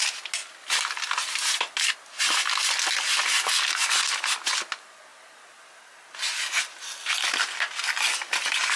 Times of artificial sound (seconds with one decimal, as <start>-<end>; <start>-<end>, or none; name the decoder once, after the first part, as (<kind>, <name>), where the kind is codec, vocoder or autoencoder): none